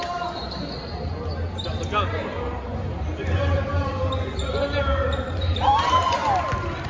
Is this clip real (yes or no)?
yes